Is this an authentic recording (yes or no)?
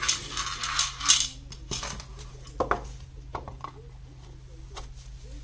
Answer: yes